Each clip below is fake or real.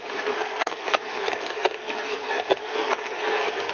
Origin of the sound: fake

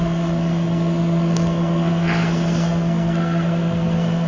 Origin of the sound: fake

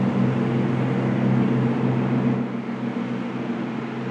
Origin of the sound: real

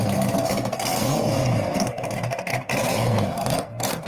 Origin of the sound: fake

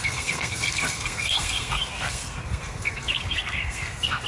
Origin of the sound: fake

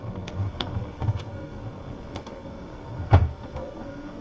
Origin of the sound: fake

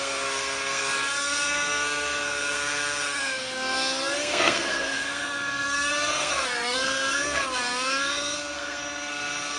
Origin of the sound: fake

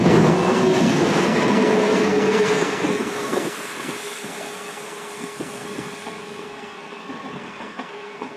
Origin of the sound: fake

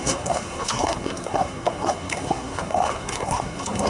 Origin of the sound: fake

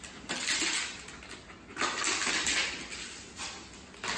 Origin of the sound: real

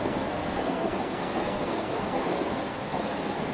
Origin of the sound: fake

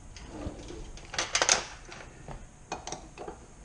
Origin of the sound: real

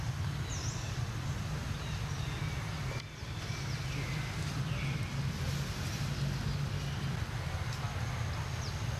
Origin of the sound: real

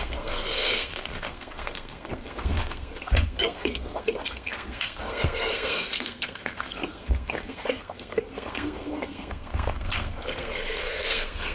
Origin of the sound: fake